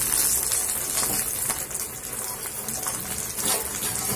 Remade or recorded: recorded